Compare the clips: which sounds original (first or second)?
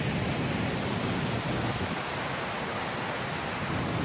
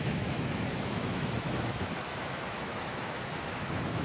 first